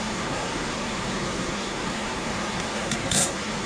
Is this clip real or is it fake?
fake